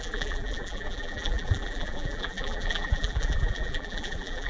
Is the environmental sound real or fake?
fake